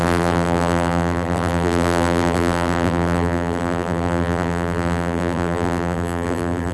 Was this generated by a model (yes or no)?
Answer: yes